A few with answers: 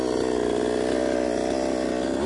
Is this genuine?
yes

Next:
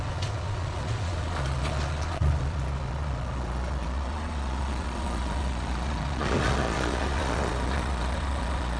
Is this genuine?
no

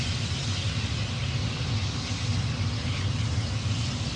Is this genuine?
yes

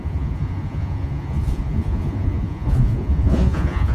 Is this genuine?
no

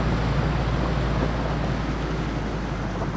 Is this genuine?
yes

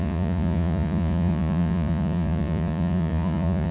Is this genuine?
no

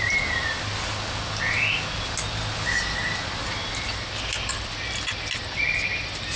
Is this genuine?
yes